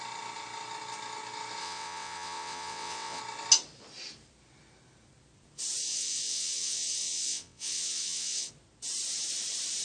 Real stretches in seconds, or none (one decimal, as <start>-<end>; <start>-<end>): 0.0-1.6; 3.2-5.8; 8.5-9.8